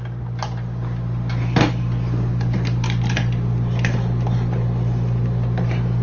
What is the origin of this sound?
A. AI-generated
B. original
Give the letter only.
B